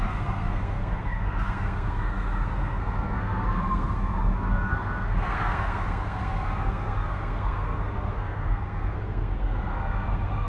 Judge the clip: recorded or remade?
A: remade